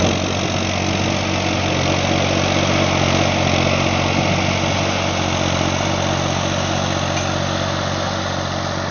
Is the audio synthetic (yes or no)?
no